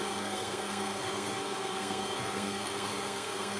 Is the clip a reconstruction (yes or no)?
yes